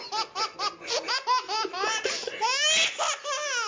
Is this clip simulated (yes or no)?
no